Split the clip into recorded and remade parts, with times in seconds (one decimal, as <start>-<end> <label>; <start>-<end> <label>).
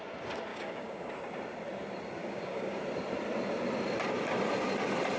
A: 0.0-0.5 recorded; 0.5-1.1 remade; 1.1-2.2 recorded; 2.2-2.8 remade; 2.8-5.2 recorded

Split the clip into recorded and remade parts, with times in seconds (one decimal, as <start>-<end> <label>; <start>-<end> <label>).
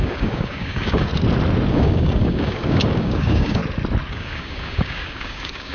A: 0.0-1.1 remade; 1.1-1.7 recorded; 1.7-3.6 remade; 3.6-4.1 recorded; 4.1-5.7 remade